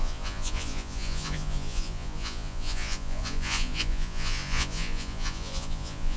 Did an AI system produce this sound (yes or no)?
yes